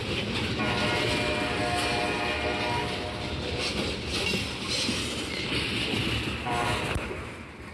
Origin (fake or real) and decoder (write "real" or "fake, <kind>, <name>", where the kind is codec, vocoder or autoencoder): real